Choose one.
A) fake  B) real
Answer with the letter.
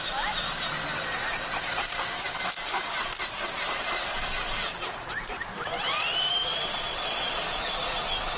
A